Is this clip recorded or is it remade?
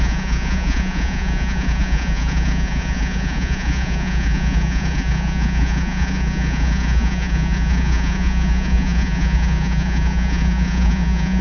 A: remade